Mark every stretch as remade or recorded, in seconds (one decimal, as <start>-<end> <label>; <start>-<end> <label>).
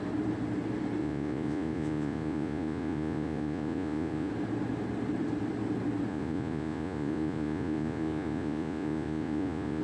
0.0-1.0 recorded; 1.0-4.3 remade; 4.3-6.1 recorded; 6.1-9.8 remade